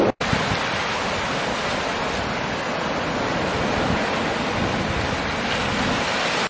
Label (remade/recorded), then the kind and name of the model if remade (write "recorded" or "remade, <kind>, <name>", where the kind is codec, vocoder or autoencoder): recorded